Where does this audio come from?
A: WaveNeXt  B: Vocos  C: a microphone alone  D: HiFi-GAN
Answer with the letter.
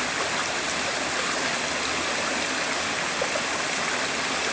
C